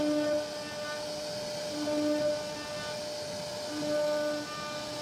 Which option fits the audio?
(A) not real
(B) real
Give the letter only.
B